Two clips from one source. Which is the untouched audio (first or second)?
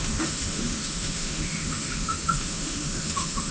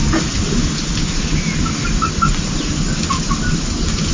second